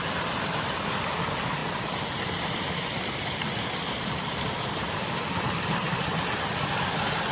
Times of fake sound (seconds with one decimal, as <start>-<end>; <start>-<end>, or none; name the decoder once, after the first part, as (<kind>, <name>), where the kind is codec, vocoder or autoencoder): 1.6-6.0 (vocoder, BigVGAN v2)

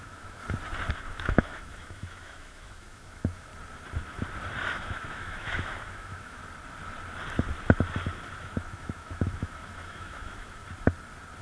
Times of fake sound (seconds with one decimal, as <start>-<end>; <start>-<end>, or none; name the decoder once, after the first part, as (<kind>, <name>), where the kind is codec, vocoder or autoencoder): 0.0-0.4 (autoencoder, DAC-VAE); 0.9-3.5; 4.6-6.4; 8.4-10.6